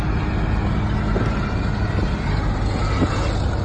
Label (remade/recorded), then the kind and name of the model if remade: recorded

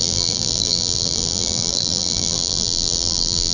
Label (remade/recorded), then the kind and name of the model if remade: remade, vocoder, BigVGAN v2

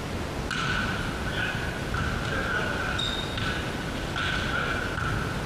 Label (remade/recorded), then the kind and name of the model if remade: recorded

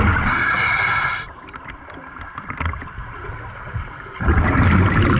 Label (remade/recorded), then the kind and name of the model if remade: remade, vocoder, BigVGAN v2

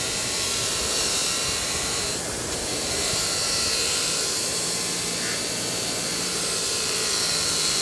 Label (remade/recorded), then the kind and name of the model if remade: remade, vocoder, BigVGAN v2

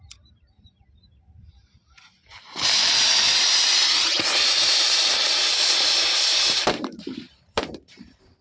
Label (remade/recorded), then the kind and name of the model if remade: remade, vocoder, BigVGAN v2